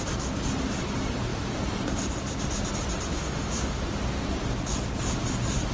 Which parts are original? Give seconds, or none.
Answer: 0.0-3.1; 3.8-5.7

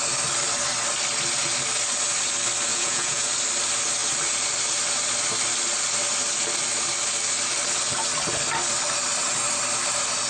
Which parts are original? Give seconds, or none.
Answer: 0.0-2.7; 3.3-10.3

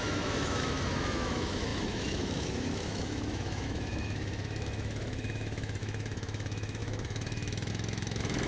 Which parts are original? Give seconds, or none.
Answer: none

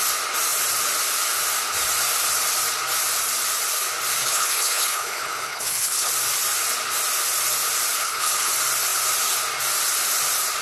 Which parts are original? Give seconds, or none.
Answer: 0.0-4.2; 6.1-8.0; 8.5-10.6

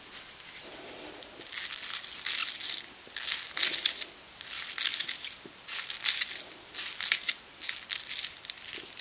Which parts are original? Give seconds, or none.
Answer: 0.0-9.0

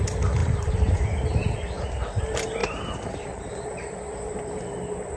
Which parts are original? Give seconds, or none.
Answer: 0.0-0.4; 2.2-2.6; 4.8-5.2

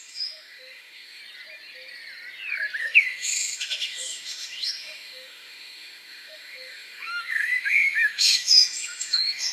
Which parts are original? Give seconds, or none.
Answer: 1.2-2.8

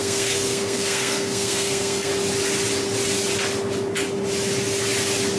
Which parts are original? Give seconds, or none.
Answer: 2.1-5.4